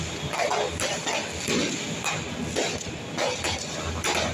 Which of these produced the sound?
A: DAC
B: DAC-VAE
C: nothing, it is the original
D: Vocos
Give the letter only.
C